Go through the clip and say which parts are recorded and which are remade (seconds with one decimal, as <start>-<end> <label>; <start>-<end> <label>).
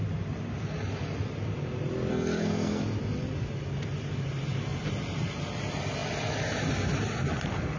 0.0-2.1 recorded; 2.1-2.8 remade; 2.8-7.8 recorded